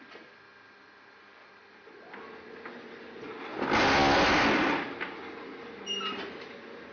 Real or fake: real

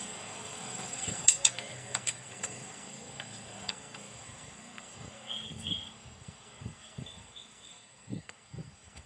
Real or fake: fake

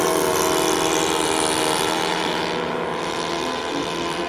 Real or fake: real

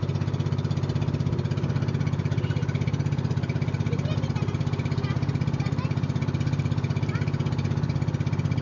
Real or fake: real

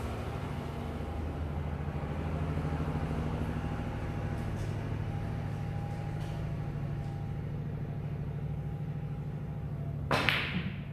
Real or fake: real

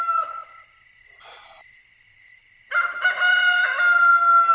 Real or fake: real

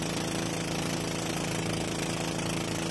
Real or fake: real